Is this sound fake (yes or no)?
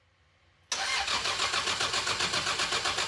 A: no